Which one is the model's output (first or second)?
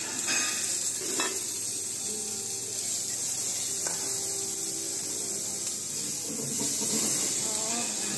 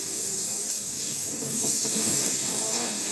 second